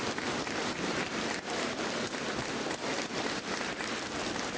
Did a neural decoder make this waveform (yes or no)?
yes